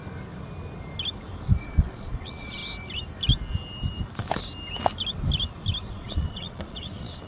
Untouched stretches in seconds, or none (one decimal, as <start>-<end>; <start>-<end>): 0.0-1.6; 2.6-5.9